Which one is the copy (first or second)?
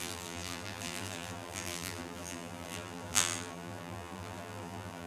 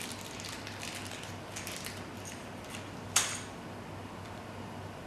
first